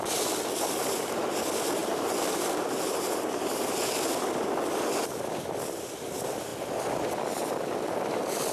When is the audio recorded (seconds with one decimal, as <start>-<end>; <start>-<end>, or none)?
0.0-1.8; 3.8-8.5